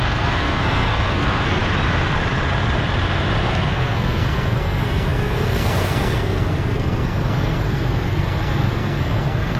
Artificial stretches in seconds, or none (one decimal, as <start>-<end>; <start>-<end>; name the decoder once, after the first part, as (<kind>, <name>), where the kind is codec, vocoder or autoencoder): 0.0-1.6 (codec, SNAC); 3.5-9.6